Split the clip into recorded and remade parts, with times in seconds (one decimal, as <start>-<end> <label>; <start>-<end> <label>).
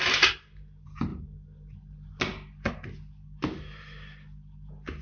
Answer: 0.0-5.0 recorded